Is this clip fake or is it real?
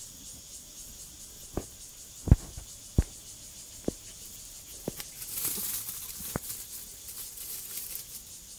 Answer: real